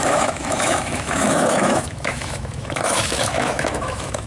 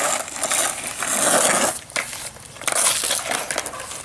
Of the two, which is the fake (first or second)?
first